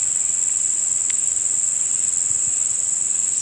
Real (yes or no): yes